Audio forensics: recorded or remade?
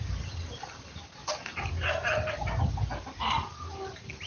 recorded